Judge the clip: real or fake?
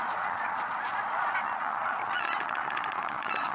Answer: fake